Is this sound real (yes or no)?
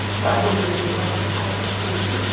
yes